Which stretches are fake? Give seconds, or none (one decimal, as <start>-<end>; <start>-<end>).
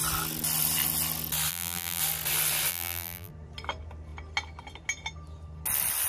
1.5-2.0; 2.7-3.3